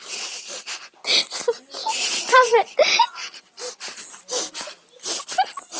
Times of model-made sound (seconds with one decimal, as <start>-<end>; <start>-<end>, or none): 1.8-3.7